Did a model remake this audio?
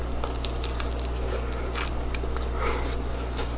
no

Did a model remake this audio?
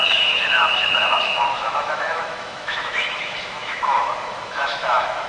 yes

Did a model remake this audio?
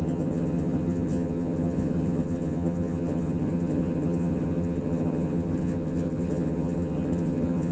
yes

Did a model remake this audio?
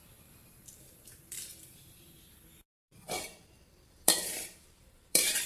yes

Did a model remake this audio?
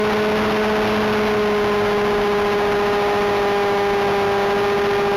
no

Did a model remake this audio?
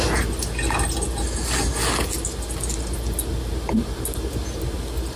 no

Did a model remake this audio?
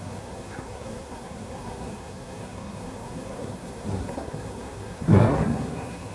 yes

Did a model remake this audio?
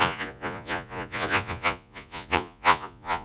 yes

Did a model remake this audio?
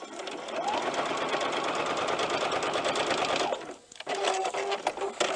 no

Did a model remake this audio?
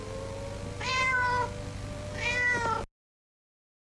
no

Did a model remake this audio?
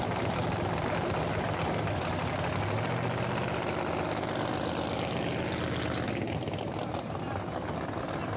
no